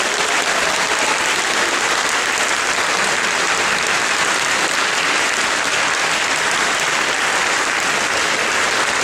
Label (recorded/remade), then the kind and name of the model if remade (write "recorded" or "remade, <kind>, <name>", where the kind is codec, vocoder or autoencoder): recorded